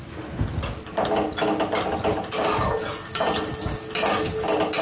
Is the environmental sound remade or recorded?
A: recorded